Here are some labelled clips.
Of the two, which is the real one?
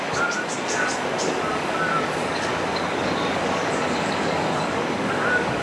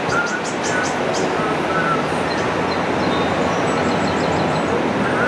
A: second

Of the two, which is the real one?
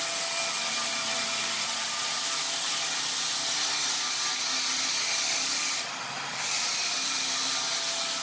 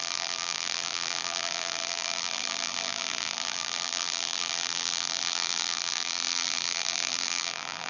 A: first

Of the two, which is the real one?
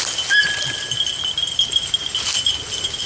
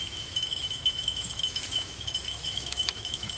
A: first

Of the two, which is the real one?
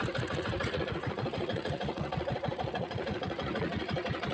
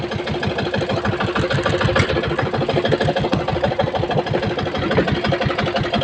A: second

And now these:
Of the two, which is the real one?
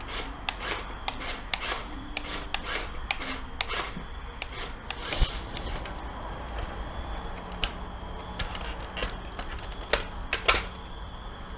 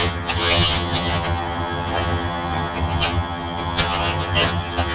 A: first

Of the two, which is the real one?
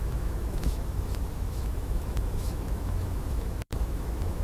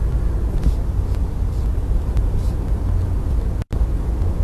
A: second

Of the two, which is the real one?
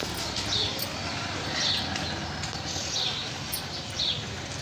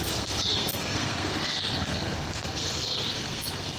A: first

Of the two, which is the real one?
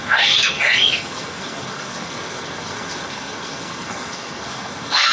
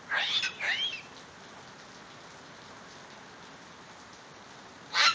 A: second